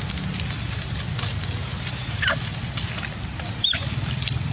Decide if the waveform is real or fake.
real